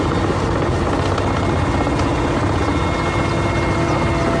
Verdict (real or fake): real